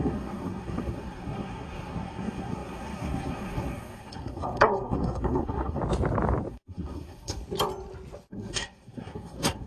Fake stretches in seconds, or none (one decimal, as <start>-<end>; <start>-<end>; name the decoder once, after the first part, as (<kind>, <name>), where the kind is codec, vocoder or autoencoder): 0.0-5.8 (codec, SNAC); 6.5-7.4; 8.3-9.7